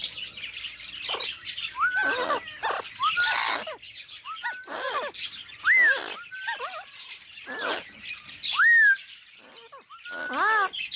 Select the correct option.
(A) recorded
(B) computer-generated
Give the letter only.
A